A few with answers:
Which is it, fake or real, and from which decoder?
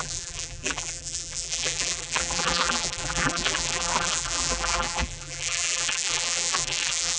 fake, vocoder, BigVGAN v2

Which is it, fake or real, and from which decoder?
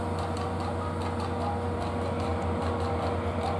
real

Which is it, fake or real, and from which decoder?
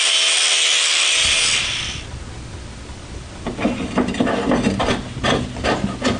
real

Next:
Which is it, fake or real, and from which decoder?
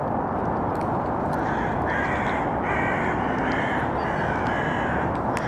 real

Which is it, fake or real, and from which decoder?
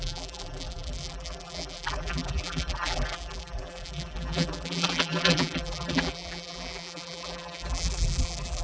fake, vocoder, BigVGAN v2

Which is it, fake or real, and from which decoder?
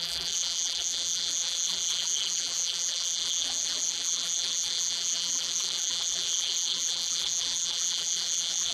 fake, vocoder, BigVGAN v2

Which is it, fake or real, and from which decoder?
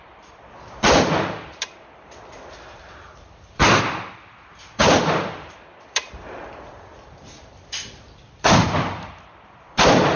fake, vocoder, BigVGAN v2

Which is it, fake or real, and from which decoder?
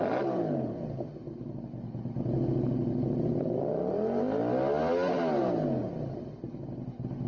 real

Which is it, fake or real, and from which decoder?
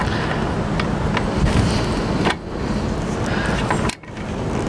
real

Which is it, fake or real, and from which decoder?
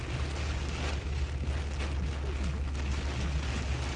real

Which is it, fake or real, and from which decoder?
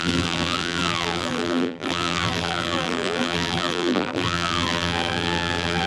fake, vocoder, BigVGAN v2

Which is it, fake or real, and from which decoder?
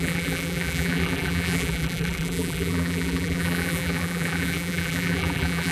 fake, vocoder, BigVGAN v2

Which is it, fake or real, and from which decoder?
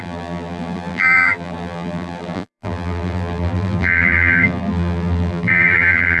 fake, vocoder, BigVGAN v2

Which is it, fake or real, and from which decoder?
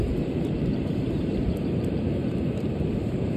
fake, vocoder, BigVGAN v2